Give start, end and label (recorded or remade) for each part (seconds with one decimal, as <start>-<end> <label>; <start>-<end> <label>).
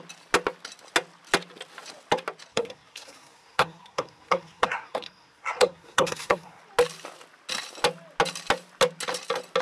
0.0-2.5 recorded; 2.5-6.6 remade; 6.6-9.6 recorded